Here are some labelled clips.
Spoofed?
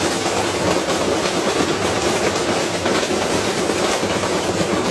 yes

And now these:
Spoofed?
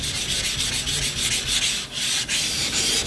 no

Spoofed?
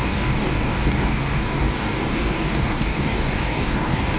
yes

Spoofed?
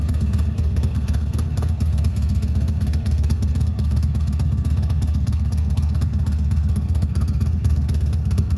yes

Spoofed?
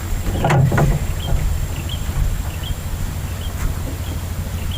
no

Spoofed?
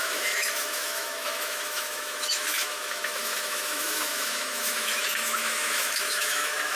yes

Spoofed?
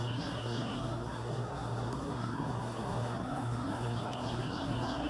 yes